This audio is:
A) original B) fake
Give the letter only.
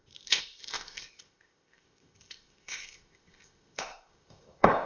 B